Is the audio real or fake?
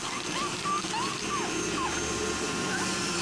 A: fake